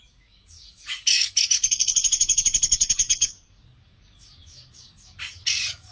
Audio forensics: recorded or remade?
remade